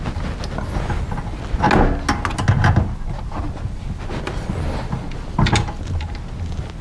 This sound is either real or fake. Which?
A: real